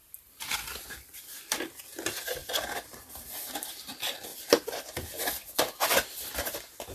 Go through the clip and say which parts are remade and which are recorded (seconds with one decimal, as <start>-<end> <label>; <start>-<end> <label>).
0.0-1.2 remade; 1.2-2.4 recorded; 2.4-3.3 remade; 3.3-6.9 recorded